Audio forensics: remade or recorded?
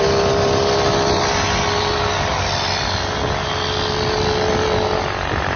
recorded